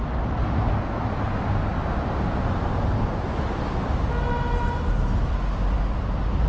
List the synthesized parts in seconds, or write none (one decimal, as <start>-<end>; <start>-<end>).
none